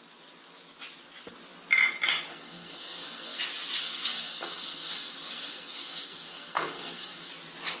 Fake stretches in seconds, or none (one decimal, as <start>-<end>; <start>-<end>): 2.3-3.4; 3.8-7.3